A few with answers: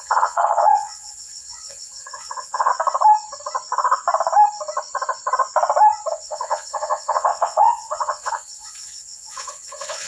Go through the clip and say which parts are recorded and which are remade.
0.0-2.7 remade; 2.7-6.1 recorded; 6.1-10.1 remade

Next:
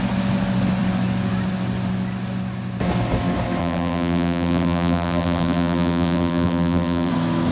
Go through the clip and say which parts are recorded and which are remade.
0.0-3.6 recorded; 3.6-7.1 remade; 7.1-7.5 recorded

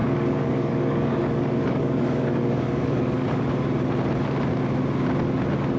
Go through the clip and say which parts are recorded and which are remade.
0.0-3.4 remade; 3.4-5.8 recorded

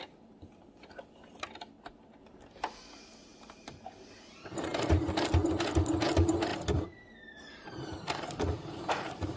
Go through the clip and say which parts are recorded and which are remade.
0.0-3.3 recorded; 3.3-3.9 remade; 3.9-6.5 recorded; 6.5-8.9 remade; 8.9-9.4 recorded